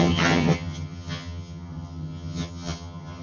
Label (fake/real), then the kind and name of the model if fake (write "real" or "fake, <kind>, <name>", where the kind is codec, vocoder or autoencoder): fake, vocoder, HiFi-GAN